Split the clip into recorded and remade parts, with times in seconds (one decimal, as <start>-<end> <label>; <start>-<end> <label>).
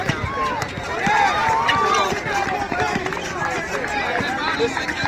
0.0-5.1 recorded